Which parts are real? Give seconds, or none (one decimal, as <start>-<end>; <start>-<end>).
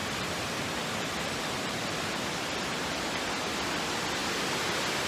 2.6-4.2